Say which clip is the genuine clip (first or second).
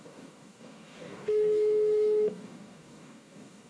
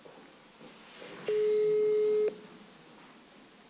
second